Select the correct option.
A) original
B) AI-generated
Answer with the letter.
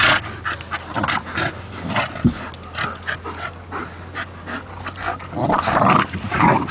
A